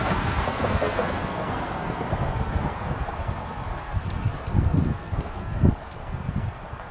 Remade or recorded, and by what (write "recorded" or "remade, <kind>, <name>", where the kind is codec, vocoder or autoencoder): remade, codec, SNAC